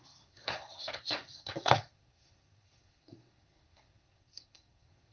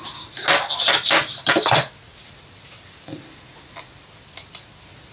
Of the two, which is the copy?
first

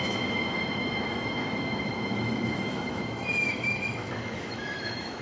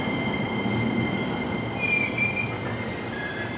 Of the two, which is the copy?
first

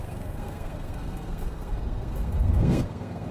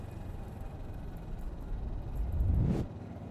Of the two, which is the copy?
first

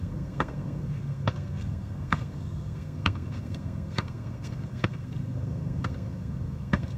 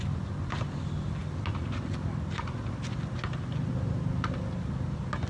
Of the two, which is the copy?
first